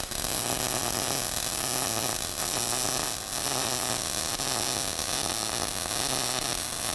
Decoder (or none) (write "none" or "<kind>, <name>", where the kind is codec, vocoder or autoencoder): none